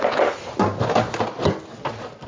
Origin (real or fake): real